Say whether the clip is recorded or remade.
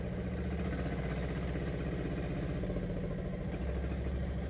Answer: recorded